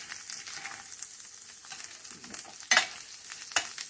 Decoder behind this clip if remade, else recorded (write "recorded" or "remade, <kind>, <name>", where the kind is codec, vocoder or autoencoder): recorded